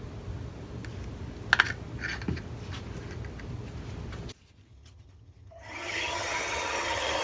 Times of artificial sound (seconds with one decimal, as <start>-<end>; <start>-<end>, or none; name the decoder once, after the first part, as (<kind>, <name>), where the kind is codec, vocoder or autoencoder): 4.7-7.2 (vocoder, HiFi-GAN)